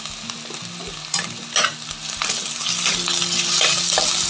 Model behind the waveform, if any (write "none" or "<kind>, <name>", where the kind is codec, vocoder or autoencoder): none